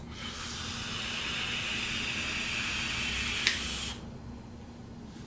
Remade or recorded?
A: recorded